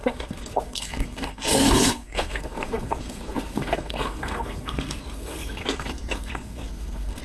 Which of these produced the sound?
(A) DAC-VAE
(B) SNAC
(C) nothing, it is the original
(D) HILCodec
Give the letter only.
B